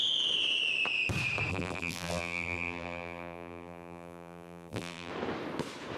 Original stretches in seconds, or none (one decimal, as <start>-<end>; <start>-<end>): 0.0-1.5; 5.1-6.0

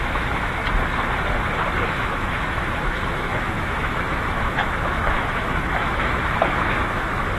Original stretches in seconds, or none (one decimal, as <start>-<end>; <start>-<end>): 0.6-1.9

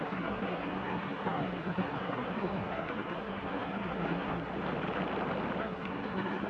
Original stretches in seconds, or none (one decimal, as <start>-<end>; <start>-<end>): 4.5-5.6

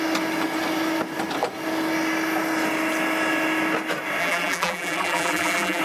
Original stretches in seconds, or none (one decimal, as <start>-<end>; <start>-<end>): 0.0-4.2

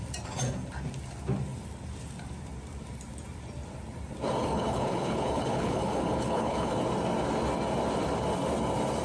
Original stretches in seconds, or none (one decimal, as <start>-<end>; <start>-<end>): 0.0-4.4; 6.8-9.0